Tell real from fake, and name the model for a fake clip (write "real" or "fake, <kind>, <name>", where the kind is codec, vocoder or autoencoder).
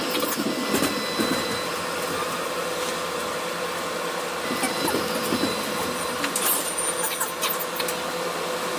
real